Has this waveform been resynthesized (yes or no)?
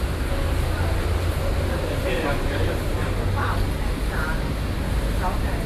no